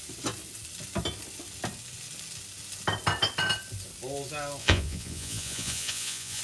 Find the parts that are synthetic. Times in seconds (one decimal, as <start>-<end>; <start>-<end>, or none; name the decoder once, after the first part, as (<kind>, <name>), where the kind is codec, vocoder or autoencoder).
4.6-6.4 (vocoder, Vocos)